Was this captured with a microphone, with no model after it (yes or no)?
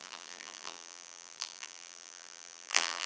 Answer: no